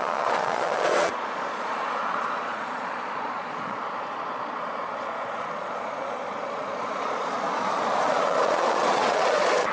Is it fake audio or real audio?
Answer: fake